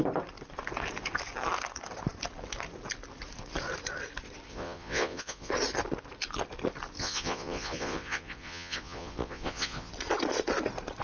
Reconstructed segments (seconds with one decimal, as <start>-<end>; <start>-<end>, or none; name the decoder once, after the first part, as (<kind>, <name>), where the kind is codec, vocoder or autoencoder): 4.5-5.5 (vocoder, Vocos); 7.0-9.9